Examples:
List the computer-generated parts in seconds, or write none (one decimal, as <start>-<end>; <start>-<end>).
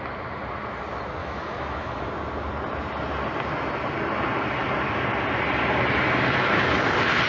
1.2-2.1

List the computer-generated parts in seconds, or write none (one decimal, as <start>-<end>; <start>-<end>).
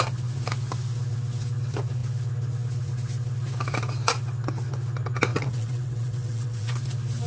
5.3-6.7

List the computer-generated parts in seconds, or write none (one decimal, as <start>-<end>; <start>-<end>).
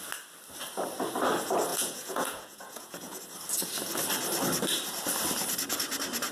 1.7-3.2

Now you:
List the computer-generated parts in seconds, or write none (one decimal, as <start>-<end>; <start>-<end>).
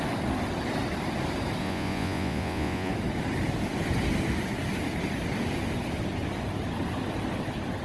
1.6-2.9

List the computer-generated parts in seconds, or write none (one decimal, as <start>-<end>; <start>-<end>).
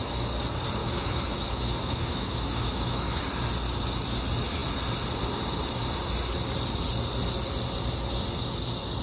0.8-3.2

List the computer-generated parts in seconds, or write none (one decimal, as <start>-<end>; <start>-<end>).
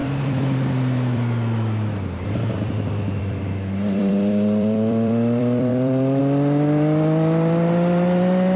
0.0-8.6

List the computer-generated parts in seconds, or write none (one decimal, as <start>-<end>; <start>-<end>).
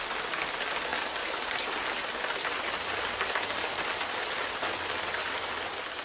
0.9-4.5; 5.2-6.0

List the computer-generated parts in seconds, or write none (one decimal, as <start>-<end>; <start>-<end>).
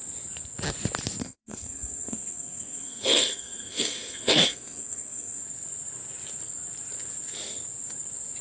1.2-5.4